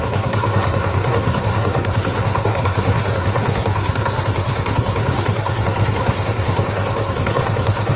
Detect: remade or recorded remade